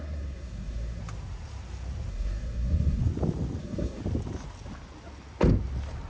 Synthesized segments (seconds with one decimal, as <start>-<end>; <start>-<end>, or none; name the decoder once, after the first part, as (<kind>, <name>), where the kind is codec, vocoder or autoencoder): 0.0-1.0 (codec, SNAC); 2.1-3.0; 3.6-4.0